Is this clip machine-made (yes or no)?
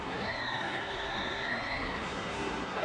yes